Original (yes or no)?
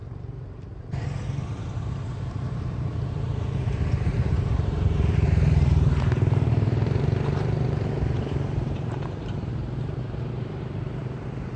no